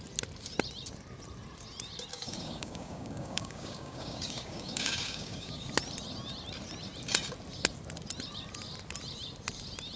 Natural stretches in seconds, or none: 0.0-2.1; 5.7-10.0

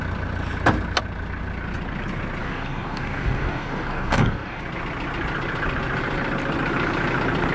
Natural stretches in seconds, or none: 0.0-2.4; 4.6-7.5

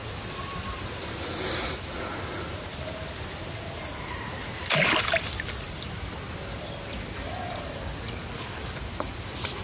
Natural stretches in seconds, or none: 2.0-2.7; 6.7-9.6

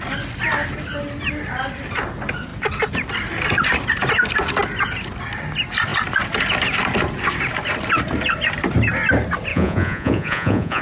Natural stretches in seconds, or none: 0.0-9.5

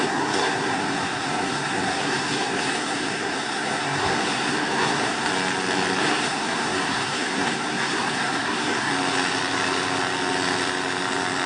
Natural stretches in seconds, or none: 5.3-6.0; 8.9-11.5

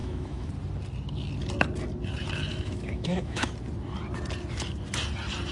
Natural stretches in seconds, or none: 0.5-2.5; 3.5-5.5

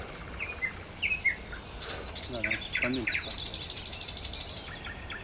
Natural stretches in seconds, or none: 0.0-5.2

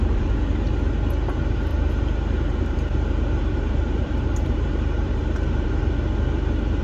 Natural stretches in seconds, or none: 0.0-1.7; 5.8-6.8